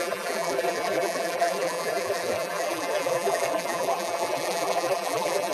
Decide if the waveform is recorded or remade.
remade